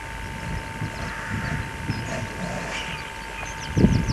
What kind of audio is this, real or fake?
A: real